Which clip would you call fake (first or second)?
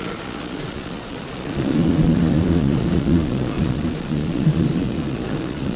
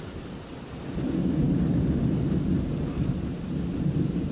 first